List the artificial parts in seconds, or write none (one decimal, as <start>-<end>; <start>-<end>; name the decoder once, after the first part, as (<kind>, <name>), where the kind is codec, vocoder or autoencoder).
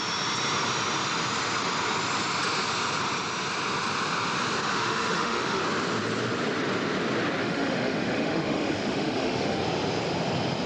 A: 4.7-5.6 (autoencoder, DAC-VAE); 7.4-9.6